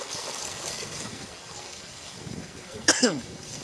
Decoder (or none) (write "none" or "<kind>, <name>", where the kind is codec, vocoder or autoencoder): codec, SNAC